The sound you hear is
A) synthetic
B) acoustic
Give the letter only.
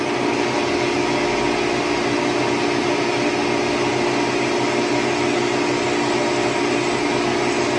B